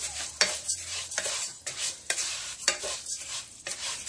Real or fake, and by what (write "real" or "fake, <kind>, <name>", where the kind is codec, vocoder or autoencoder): fake, vocoder, BigVGAN v2